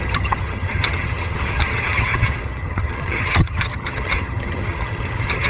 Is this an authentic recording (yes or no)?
no